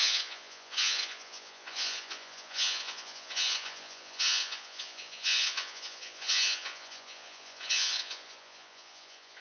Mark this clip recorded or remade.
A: remade